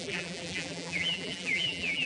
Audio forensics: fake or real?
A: fake